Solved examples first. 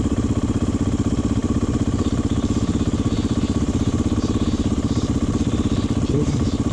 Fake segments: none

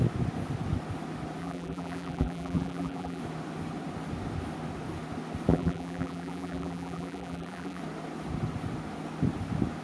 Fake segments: 1.4-3.2 (vocoder, BigVGAN v2); 5.5-7.8

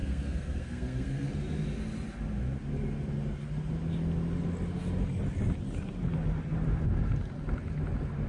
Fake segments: 0.0-1.3 (codec, SNAC)

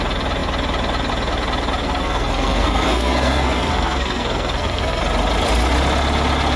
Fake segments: 1.8-5.0 (codec, SNAC)

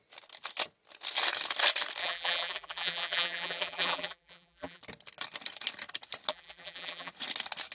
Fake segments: 2.0-4.8 (vocoder, BigVGAN v2); 6.3-7.1

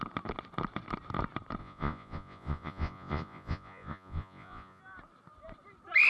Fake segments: 1.6-4.8 (vocoder, Vocos)

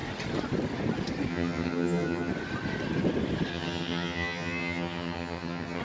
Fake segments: 1.3-2.3 (vocoder, HiFi-GAN); 3.5-5.8

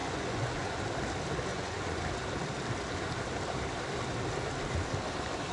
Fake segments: 0.0-0.8 (vocoder, Vocos); 1.5-2.0